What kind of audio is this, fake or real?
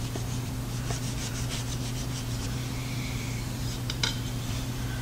fake